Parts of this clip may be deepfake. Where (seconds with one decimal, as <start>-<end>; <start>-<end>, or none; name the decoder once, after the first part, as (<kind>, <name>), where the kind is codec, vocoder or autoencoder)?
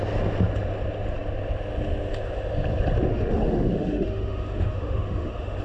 3.1-5.6 (autoencoder, DAC-VAE)